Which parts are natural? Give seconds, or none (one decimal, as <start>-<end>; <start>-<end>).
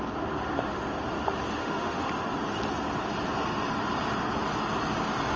0.0-1.6; 2.1-5.4